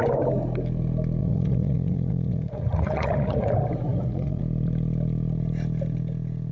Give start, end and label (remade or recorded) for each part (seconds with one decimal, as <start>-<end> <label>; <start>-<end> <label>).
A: 0.0-1.2 recorded; 1.2-3.5 remade; 3.5-3.9 recorded; 3.9-4.4 remade; 4.4-6.5 recorded